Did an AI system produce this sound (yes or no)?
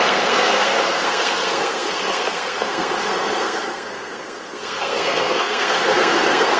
yes